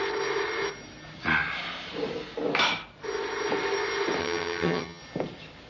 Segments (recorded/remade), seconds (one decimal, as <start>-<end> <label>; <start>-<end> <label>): 0.0-4.2 recorded; 4.2-5.0 remade; 5.0-5.7 recorded